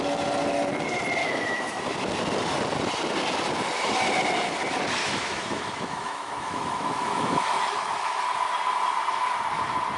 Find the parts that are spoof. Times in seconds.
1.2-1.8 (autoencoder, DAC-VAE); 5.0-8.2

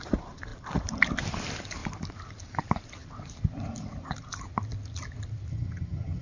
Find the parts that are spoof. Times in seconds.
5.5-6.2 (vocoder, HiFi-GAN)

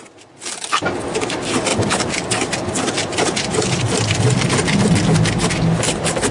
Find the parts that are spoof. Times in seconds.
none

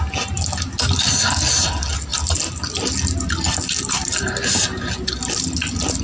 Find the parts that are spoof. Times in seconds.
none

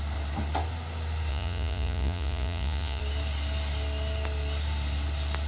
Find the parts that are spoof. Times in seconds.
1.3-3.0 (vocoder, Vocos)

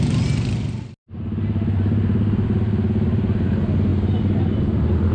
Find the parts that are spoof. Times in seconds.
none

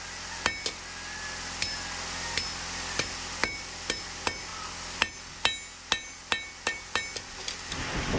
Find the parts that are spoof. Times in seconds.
none

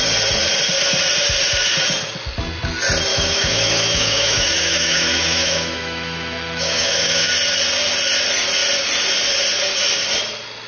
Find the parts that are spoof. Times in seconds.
3.1-7.3 (autoencoder, DAC-VAE)